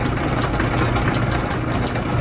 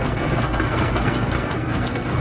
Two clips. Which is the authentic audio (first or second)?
first